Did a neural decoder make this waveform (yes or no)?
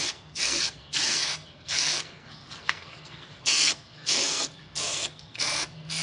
yes